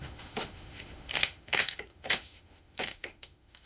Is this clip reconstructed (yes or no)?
yes